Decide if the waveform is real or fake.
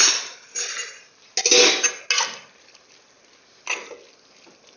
real